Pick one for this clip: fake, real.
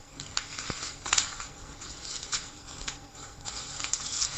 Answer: fake